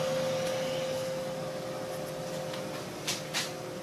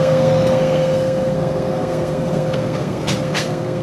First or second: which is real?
first